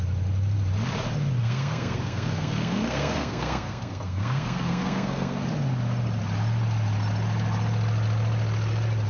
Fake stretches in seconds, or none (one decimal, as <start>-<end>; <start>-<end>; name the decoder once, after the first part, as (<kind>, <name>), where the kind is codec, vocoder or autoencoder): 1.4-5.4 (codec, SNAC)